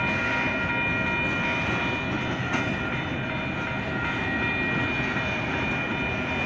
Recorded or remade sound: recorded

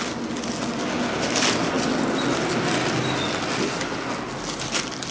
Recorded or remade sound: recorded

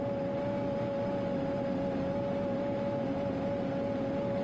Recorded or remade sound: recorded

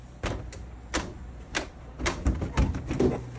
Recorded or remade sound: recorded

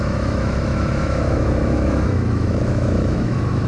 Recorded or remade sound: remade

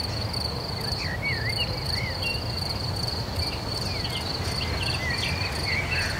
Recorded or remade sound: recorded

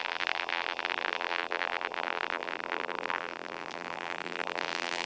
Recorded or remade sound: remade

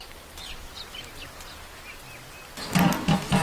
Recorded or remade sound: recorded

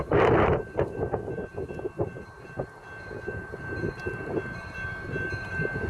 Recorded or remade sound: recorded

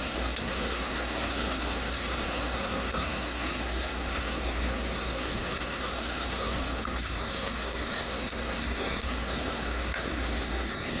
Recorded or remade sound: remade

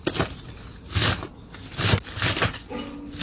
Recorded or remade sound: recorded